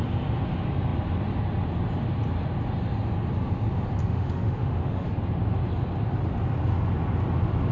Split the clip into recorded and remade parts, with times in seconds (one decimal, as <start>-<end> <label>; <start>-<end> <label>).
0.0-4.0 recorded; 4.0-5.1 remade; 5.1-7.7 recorded

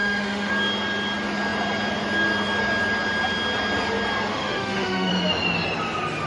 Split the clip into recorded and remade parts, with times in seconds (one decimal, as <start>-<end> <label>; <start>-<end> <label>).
0.0-0.5 remade; 0.5-4.3 recorded; 4.3-5.1 remade; 5.1-6.3 recorded

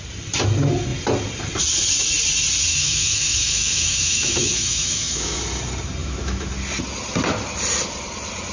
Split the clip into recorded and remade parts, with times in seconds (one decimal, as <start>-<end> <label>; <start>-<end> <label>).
0.0-2.7 recorded; 2.7-5.4 remade; 5.4-6.0 recorded; 6.0-6.5 remade; 6.5-8.5 recorded

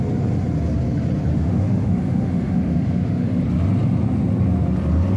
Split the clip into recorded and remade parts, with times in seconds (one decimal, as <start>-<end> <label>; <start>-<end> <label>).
0.0-1.3 recorded; 1.3-3.4 remade; 3.4-5.2 recorded

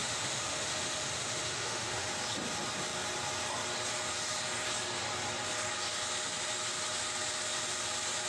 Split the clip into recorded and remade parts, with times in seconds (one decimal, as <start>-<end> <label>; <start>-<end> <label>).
0.0-2.1 remade; 2.1-8.3 recorded